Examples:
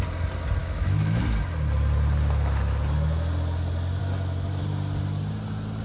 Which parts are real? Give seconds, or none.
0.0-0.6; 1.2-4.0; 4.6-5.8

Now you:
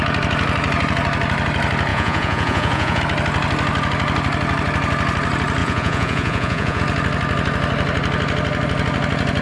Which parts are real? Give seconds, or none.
0.0-1.9; 3.0-5.6; 6.8-9.4

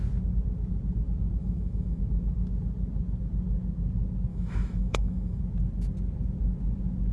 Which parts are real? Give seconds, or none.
0.0-1.4; 2.0-4.3; 5.4-7.1

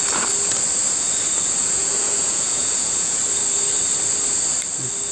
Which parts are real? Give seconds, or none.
0.0-1.6; 3.2-5.1